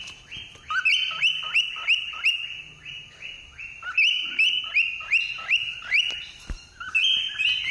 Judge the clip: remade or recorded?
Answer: recorded